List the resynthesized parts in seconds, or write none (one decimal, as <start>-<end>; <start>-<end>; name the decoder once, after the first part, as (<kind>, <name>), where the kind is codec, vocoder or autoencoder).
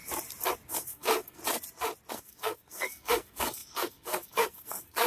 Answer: 0.7-1.4 (codec, SNAC); 2.1-5.1